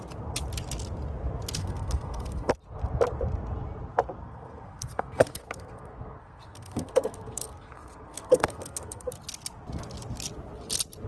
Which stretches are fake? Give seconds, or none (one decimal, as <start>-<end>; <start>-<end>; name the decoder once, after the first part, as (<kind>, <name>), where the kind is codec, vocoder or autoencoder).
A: 1.6-2.5 (codec, SNAC); 4.2-9.1